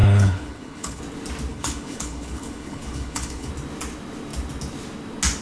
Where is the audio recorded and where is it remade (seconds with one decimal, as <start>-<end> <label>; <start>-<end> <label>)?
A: 0.0-1.0 remade; 1.0-1.5 recorded; 1.5-3.5 remade; 3.5-5.4 recorded